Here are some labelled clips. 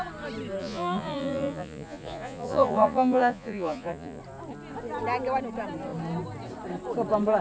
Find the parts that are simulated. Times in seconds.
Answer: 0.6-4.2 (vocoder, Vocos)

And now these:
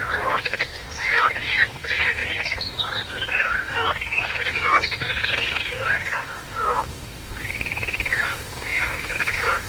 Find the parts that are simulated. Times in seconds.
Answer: 0.0-9.7 (codec, DAC)

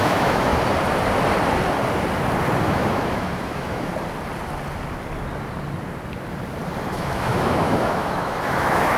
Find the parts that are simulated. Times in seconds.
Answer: 0.0-0.5 (autoencoder, DAC-VAE); 2.6-3.9; 6.9-9.0